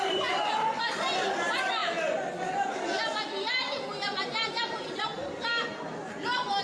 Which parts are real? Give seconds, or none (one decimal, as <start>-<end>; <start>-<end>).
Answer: 0.0-6.6